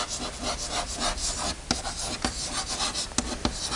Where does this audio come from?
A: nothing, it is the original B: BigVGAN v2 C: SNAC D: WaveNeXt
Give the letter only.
A